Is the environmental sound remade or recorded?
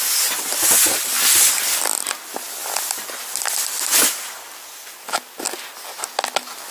recorded